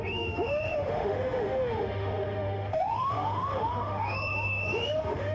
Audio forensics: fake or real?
fake